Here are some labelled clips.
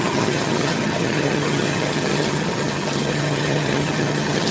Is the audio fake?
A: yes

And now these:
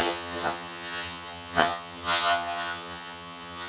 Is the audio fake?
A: yes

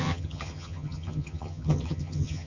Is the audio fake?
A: yes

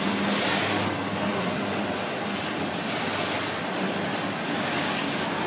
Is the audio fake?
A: no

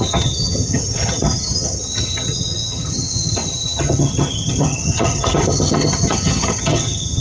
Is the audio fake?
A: yes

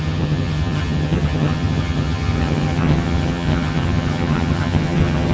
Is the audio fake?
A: yes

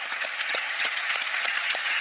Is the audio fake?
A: yes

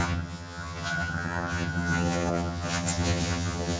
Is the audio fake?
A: yes